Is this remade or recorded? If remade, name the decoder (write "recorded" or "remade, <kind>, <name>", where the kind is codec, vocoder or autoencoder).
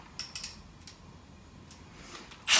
recorded